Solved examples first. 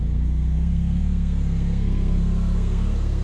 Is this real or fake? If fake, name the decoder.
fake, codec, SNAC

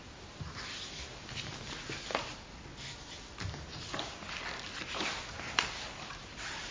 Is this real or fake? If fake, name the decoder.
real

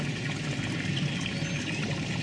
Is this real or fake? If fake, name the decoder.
real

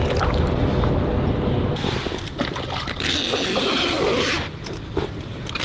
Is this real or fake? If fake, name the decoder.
real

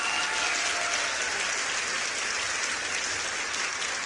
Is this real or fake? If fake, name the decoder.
real